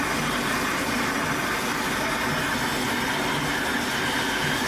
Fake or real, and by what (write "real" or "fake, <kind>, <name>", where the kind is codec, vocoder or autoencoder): real